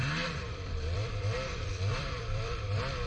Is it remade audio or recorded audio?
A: remade